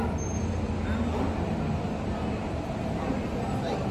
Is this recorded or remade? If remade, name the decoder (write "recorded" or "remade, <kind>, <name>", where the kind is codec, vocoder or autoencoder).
recorded